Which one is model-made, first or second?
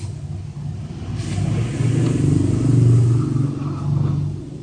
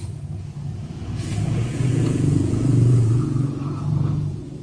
second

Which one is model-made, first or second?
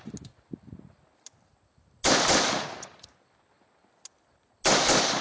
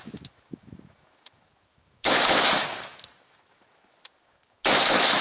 second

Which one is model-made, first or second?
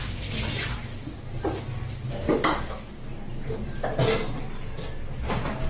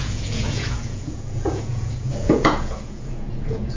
second